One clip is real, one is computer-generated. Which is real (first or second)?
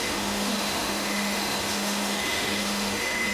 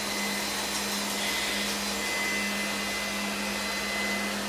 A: second